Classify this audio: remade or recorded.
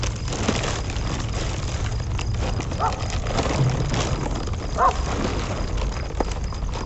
recorded